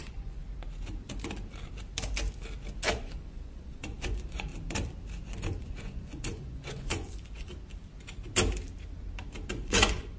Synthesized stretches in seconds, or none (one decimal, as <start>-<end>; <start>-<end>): 0.0-0.4; 2.9-4.5; 5.6-7.5; 9.5-10.2